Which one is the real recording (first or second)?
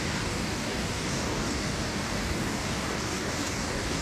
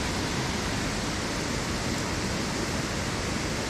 second